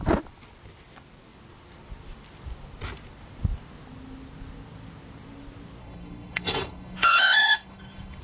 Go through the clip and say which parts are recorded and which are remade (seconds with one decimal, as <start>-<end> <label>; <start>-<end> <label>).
0.0-5.8 recorded; 5.8-8.2 remade